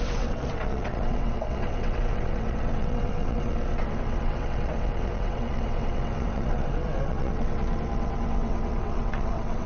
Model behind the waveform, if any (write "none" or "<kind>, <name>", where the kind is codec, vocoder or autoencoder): vocoder, WaveNeXt